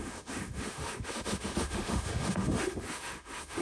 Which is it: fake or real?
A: fake